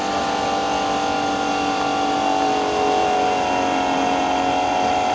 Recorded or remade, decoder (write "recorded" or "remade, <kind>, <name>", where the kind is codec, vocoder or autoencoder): recorded